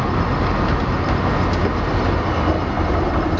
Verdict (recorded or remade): recorded